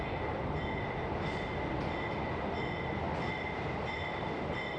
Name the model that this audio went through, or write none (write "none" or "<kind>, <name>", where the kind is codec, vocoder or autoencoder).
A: none